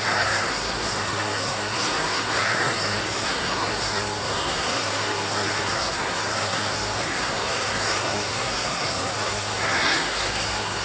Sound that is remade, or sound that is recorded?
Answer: remade